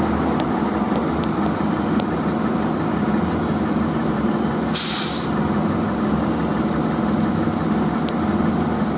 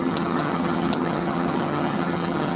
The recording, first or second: first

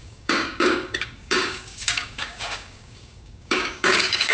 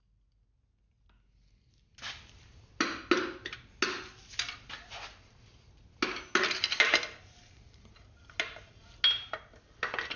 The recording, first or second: second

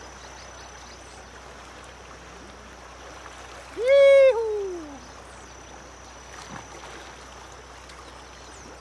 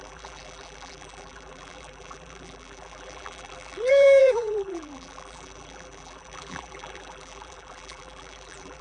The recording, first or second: first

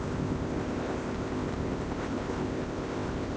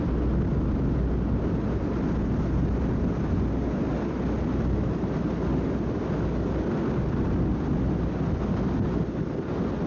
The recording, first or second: second